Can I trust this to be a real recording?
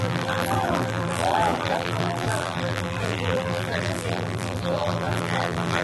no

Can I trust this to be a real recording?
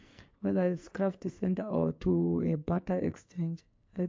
no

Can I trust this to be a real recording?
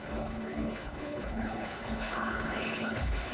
no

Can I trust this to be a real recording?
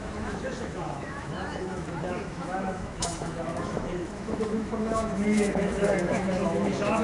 no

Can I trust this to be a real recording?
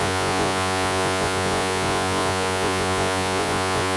no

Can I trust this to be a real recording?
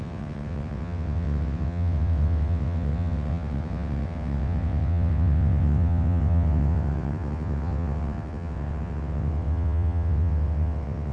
no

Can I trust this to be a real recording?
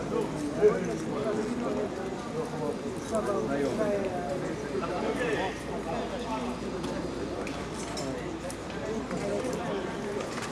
yes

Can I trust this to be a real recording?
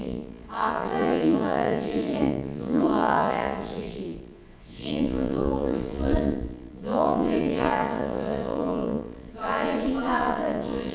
no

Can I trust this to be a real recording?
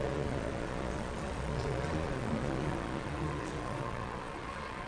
no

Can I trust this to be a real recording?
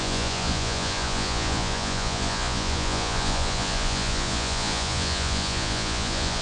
no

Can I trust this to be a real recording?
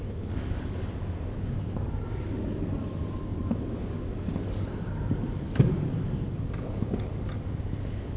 no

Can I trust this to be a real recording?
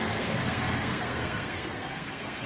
no